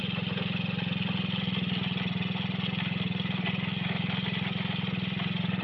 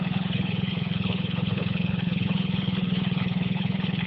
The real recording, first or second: first